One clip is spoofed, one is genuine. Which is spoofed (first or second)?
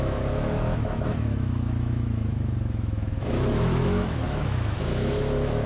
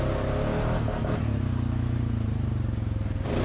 first